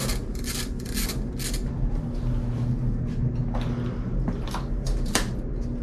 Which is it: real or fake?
real